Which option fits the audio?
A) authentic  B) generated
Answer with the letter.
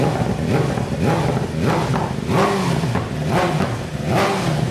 A